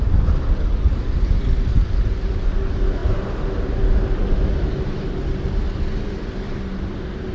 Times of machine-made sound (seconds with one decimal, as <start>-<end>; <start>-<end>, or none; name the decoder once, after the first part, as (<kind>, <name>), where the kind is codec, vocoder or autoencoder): none